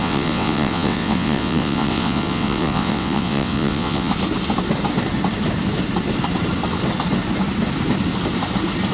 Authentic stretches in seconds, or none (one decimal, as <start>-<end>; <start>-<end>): 4.1-8.9